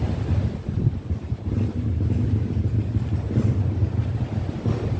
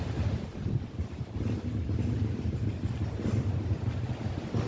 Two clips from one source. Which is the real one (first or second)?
first